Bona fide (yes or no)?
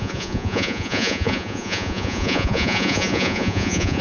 no